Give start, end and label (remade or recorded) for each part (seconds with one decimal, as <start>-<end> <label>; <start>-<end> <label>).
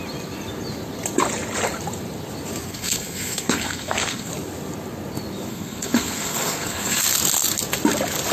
0.0-2.6 recorded; 2.6-4.3 remade; 4.3-5.5 recorded; 5.5-7.1 remade; 7.1-8.3 recorded